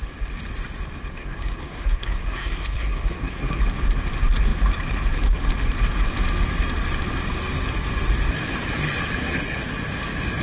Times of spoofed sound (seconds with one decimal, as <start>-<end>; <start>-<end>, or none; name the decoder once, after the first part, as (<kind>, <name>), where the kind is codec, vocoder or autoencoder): 1.1-3.6 (codec, SNAC); 9.2-9.7